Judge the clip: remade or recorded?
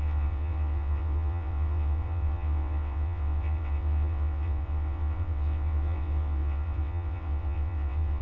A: remade